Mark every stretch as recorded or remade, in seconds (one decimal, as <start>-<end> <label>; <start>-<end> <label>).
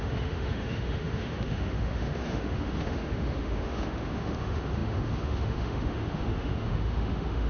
0.0-7.5 remade